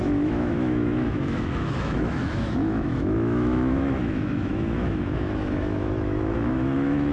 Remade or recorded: remade